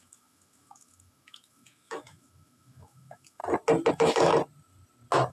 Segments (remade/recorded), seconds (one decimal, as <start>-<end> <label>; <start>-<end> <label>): 0.0-3.4 remade; 3.4-3.9 recorded; 3.9-4.3 remade; 4.3-5.3 recorded